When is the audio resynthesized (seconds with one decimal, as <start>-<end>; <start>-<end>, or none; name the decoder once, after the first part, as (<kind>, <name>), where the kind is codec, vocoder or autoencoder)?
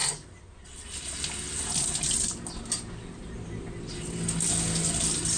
none